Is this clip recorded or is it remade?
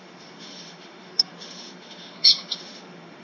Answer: remade